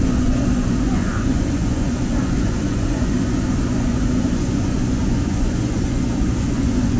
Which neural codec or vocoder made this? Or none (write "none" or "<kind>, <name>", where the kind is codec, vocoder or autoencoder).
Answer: vocoder, Vocos